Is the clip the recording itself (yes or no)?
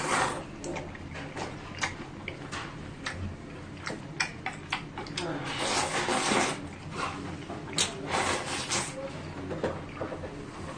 yes